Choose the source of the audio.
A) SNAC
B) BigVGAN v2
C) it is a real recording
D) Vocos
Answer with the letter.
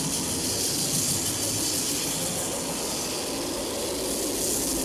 C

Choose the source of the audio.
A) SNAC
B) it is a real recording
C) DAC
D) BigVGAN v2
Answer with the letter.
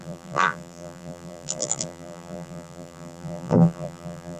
D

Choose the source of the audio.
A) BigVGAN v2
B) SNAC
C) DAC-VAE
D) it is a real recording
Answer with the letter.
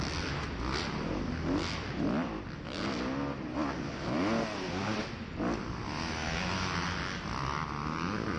D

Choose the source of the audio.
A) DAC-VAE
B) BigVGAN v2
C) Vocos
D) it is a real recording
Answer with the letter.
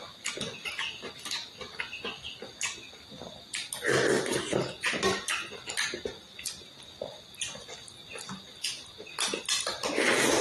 D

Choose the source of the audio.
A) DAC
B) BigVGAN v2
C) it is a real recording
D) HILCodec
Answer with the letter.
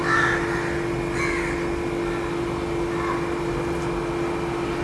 C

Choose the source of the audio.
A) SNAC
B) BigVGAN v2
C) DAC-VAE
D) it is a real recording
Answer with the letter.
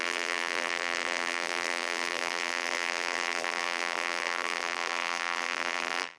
B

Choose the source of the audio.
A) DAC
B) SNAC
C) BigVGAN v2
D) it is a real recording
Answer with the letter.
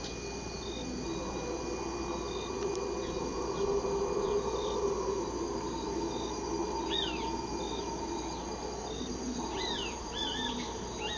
D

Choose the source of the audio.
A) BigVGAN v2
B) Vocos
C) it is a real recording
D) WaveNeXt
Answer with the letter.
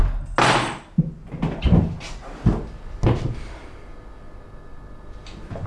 C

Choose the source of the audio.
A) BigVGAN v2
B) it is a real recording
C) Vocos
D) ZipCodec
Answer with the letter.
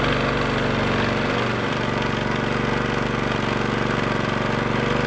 B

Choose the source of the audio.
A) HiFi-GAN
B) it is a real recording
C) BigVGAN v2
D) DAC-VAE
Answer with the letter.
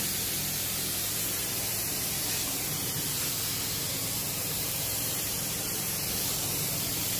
C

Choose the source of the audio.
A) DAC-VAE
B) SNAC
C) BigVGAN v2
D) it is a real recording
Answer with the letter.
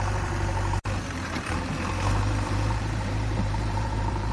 C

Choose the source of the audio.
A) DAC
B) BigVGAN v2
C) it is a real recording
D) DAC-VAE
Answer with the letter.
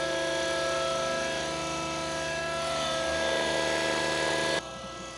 C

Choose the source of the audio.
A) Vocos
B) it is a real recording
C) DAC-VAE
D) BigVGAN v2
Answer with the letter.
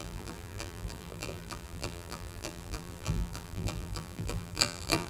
D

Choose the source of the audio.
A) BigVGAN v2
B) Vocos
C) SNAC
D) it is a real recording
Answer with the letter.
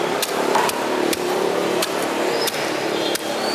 A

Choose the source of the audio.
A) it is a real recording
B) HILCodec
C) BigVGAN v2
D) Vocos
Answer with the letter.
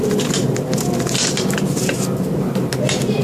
A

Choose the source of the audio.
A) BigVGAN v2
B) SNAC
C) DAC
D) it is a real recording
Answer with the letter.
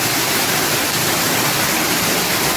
D